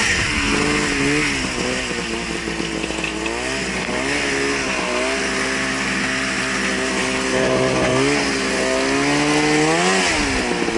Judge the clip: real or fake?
real